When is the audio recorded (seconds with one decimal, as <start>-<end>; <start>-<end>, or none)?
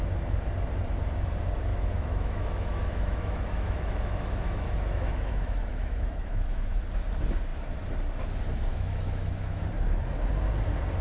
0.0-1.7; 6.8-8.7; 9.6-11.0